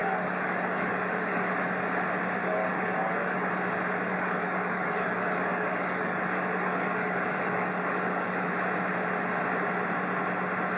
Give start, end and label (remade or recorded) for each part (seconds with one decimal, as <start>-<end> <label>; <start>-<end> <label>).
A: 0.0-1.5 remade; 1.5-2.4 recorded; 2.4-3.5 remade; 3.5-4.1 recorded; 4.1-8.5 remade; 8.5-10.8 recorded